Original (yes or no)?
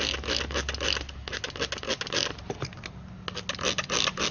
yes